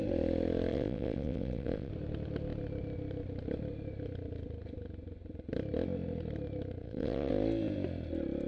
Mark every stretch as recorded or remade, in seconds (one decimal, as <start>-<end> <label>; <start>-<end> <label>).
0.0-0.7 recorded; 0.7-1.9 remade; 1.9-6.8 recorded; 6.8-7.3 remade; 7.3-8.5 recorded